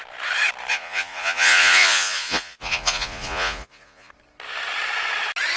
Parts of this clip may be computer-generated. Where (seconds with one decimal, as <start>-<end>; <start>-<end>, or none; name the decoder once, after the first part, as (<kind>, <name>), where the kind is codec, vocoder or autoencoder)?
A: 0.7-4.1 (vocoder, Vocos)